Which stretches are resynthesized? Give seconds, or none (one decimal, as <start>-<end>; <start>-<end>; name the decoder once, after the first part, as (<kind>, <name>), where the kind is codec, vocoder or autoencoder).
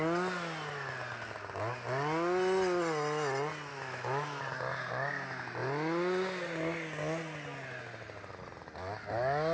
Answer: 3.7-4.4 (autoencoder, DAC-VAE)